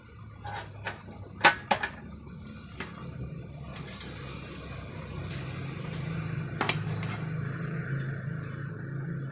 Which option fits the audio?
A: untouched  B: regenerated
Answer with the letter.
A